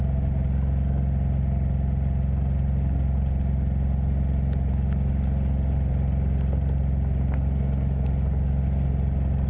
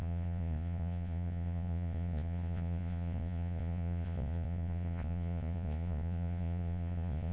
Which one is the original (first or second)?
first